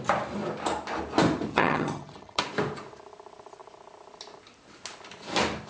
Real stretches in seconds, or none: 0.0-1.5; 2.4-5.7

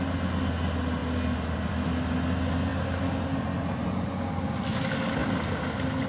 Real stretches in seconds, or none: 0.0-6.1

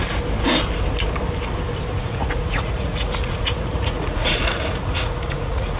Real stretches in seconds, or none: 0.0-2.0

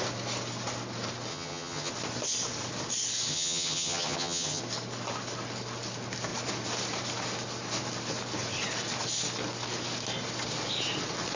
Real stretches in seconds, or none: 0.0-1.3; 1.9-3.3; 4.6-11.4

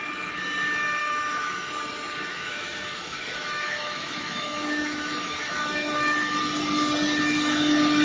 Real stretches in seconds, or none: 0.0-1.0; 1.7-2.3; 6.4-8.0

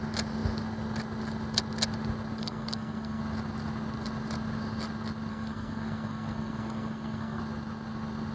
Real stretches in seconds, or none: 0.0-2.4; 3.2-5.3; 7.4-8.3

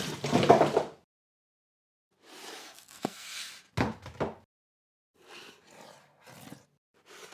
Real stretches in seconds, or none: 0.0-2.6; 3.5-7.3

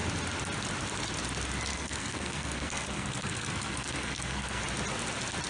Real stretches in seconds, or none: 0.0-1.7; 4.6-5.5